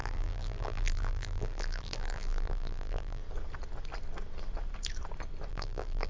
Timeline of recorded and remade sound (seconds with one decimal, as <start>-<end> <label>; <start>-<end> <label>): 0.0-3.2 remade; 3.2-5.5 recorded; 5.5-6.1 remade